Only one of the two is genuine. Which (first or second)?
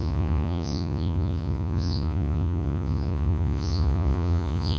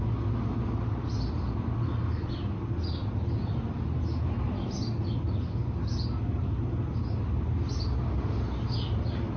second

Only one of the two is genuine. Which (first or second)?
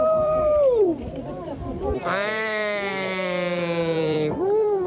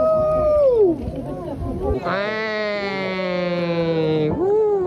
second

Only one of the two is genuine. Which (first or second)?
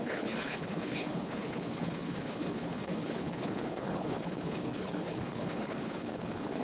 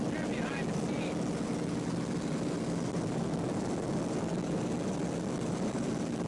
second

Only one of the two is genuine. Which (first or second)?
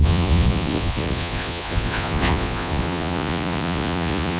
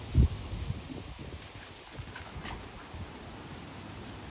second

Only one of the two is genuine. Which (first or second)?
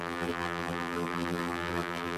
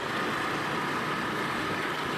second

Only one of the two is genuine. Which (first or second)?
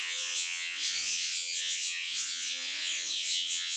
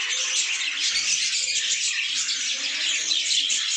second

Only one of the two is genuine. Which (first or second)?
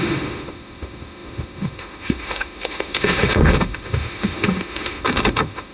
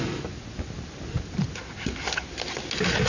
second